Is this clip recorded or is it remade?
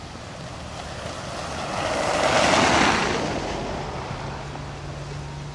recorded